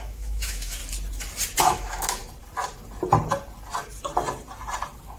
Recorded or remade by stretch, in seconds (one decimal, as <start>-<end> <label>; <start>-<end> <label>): 0.0-0.8 remade; 0.8-1.6 recorded; 1.6-2.2 remade; 2.2-5.2 recorded